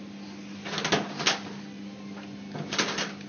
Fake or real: real